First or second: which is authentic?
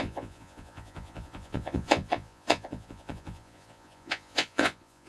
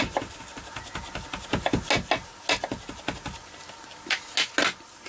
second